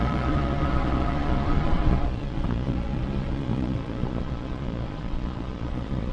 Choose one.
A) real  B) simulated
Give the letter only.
B